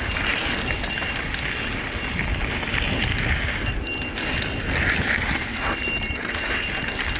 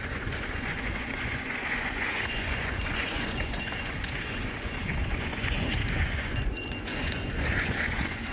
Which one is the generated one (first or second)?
second